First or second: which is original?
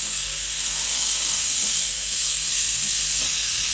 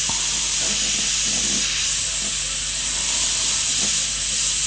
second